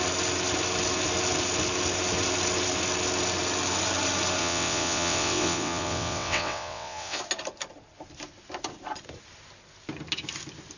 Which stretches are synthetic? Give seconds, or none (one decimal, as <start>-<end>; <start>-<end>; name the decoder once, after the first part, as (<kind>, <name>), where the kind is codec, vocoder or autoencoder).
4.4-7.2 (vocoder, WaveNeXt)